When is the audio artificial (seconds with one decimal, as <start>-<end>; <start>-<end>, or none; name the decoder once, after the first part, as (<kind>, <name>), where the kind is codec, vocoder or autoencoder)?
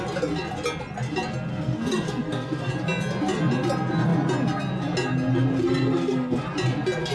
1.5-2.7 (codec, SNAC); 5.6-6.4